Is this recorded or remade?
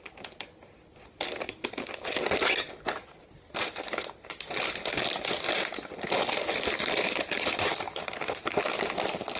recorded